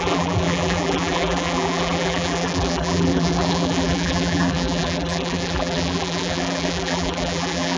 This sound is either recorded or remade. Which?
remade